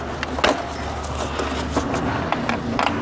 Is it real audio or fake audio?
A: real